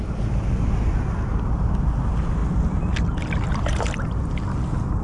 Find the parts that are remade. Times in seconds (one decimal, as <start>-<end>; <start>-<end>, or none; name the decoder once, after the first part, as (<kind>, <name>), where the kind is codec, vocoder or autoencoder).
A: none